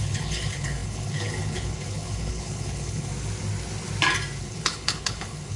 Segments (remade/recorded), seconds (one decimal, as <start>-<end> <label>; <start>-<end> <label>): 0.0-3.1 remade; 3.1-4.4 recorded; 4.4-5.6 remade